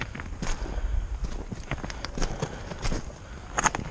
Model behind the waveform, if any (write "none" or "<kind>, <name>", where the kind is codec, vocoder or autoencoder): none